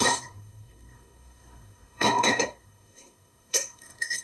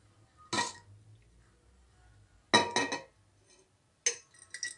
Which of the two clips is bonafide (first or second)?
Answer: second